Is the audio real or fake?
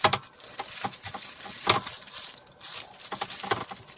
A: real